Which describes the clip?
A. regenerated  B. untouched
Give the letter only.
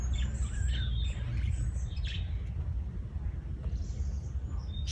B